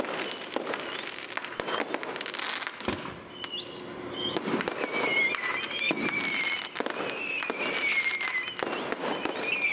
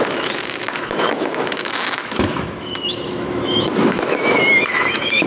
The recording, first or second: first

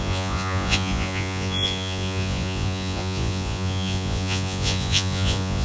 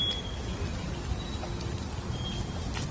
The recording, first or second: second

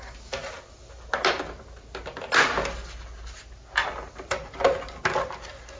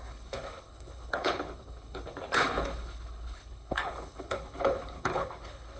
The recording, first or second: first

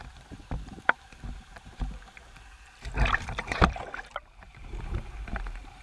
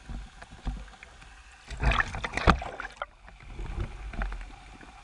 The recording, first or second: second